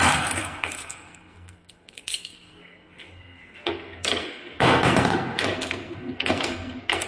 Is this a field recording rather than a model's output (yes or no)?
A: no